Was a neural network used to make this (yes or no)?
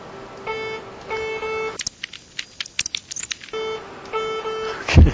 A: no